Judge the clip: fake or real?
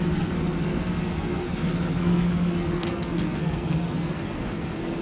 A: fake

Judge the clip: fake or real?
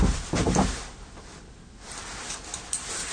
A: real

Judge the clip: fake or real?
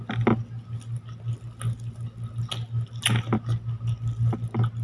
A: real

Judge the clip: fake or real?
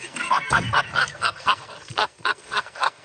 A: fake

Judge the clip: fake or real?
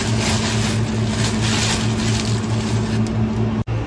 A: real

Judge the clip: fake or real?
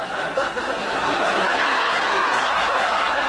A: fake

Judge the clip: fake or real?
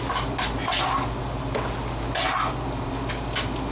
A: real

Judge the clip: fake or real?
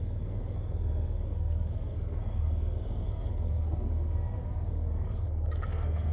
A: fake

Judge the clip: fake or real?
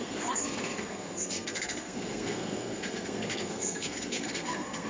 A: fake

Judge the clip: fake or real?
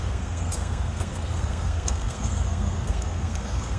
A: fake